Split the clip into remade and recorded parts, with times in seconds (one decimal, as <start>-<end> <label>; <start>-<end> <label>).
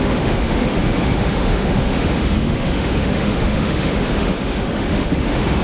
0.0-5.6 remade